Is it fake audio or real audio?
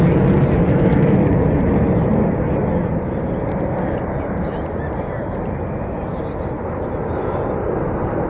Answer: real